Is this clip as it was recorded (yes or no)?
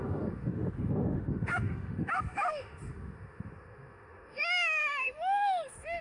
no